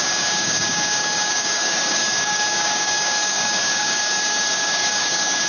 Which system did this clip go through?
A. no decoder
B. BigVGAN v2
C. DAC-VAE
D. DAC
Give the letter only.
D